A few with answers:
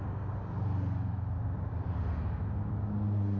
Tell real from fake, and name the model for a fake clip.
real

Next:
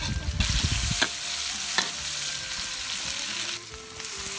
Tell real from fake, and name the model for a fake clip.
real